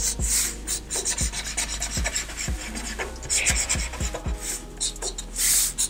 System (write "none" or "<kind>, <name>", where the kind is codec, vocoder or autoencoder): none